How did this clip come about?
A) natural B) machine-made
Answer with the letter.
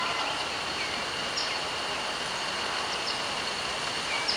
A